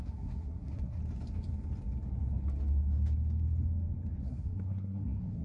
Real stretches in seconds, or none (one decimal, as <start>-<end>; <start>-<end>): 1.0-4.2